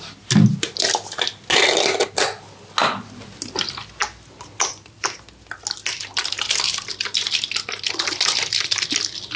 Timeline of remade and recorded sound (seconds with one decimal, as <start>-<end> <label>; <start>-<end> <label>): 0.0-9.4 recorded